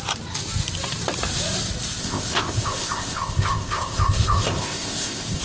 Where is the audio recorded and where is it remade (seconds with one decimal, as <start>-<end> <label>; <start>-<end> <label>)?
0.0-2.0 recorded; 2.0-5.4 remade